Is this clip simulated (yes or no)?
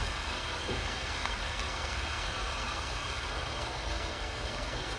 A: yes